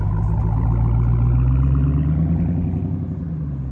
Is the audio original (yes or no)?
yes